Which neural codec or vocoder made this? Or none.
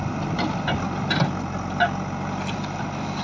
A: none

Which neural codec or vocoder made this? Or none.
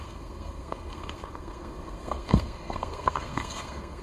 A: codec, SNAC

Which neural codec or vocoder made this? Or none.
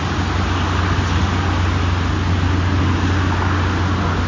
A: none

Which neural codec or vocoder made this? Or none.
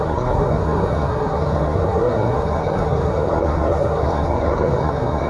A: codec, SNAC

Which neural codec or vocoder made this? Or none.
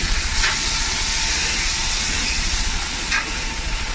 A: vocoder, Vocos